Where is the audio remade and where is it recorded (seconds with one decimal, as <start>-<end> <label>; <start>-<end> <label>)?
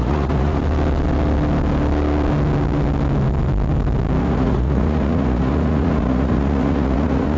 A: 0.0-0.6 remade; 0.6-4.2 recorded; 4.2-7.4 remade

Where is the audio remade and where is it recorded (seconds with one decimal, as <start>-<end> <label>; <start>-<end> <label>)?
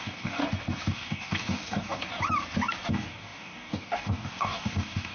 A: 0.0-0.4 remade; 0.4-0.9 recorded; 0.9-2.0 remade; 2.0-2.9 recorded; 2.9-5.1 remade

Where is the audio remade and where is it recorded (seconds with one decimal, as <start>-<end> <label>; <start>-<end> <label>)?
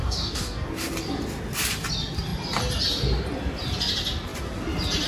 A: 0.0-0.7 remade; 0.7-5.1 recorded